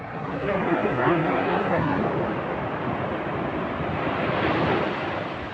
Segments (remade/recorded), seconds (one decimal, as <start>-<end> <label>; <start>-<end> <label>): 0.0-2.0 remade; 2.0-5.5 recorded